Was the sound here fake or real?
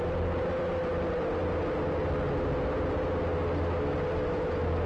real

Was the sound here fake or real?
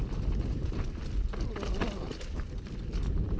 real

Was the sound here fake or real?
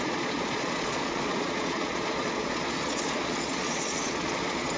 fake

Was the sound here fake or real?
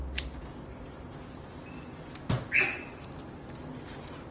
real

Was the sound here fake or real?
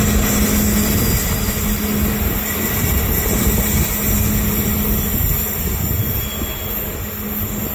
real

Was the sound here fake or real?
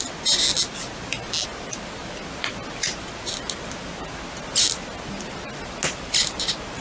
real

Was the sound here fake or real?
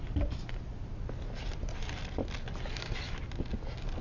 real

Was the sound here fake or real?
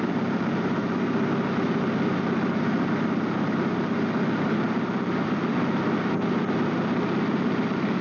real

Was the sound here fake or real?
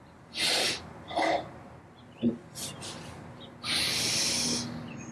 real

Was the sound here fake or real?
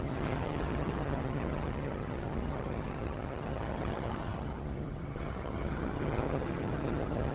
fake